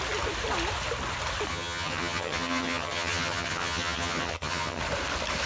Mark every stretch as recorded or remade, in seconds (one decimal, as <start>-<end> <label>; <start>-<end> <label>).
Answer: 0.0-1.5 recorded; 1.5-4.8 remade; 4.8-5.5 recorded